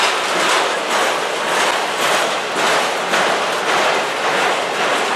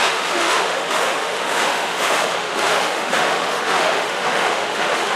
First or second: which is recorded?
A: first